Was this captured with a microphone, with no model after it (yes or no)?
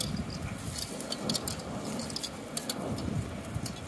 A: yes